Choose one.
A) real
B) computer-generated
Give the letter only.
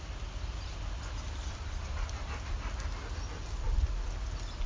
A